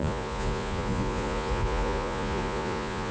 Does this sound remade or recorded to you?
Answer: remade